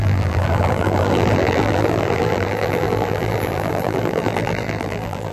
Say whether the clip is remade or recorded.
remade